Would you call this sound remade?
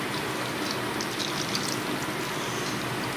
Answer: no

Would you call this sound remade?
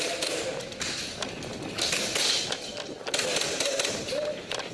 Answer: no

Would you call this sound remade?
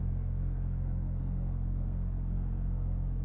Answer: yes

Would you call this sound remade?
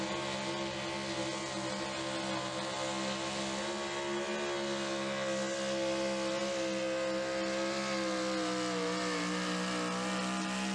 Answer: no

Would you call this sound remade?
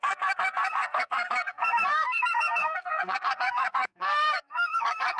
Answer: yes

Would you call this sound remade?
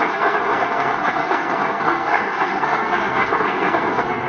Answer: yes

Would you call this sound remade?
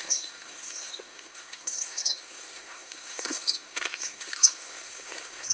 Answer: yes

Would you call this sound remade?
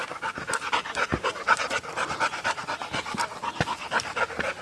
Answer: no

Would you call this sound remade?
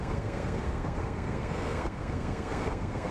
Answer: yes